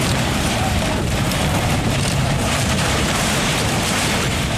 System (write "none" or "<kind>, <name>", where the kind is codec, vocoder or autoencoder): vocoder, BigVGAN v2